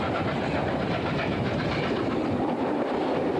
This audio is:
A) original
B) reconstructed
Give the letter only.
A